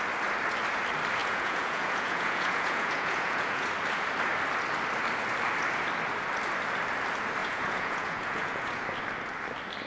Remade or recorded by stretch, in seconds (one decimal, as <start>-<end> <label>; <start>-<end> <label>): 0.0-1.2 recorded; 1.2-3.7 remade; 3.7-7.4 recorded; 7.4-8.8 remade; 8.8-9.9 recorded